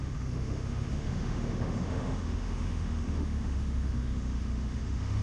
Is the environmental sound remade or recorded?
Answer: remade